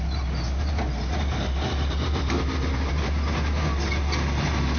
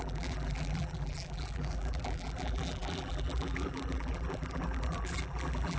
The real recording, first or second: first